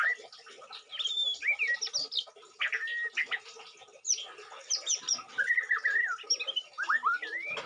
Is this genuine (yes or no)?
yes